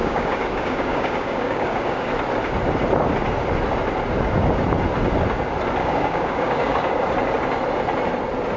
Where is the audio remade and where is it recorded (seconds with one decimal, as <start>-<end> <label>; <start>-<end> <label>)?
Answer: 0.0-2.1 remade; 2.1-5.8 recorded; 5.8-7.0 remade; 7.0-8.6 recorded